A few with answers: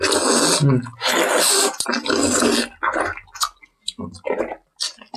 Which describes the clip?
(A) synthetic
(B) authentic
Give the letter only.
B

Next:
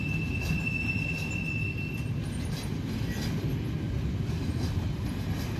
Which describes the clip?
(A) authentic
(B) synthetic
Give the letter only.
A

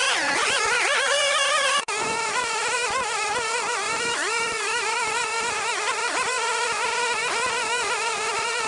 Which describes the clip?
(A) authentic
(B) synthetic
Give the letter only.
B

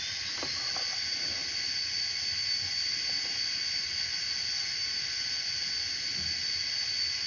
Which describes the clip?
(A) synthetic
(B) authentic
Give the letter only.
B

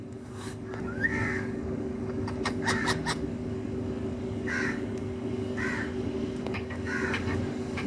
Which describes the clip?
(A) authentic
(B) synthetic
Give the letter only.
B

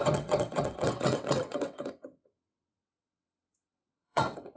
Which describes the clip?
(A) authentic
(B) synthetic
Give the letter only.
B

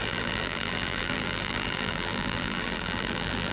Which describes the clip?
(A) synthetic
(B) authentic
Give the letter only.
A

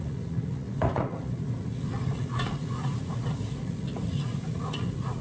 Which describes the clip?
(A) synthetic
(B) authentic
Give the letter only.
A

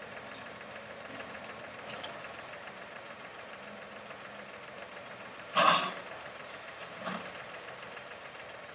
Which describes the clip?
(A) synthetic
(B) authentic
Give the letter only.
A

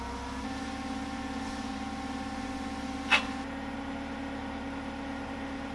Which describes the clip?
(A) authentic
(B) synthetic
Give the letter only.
A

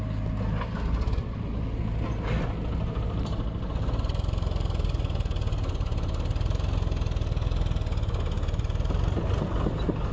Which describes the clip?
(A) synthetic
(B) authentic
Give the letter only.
B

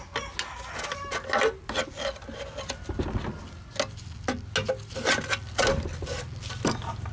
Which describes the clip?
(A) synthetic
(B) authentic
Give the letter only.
B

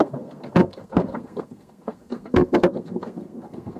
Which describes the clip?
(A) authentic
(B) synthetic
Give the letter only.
B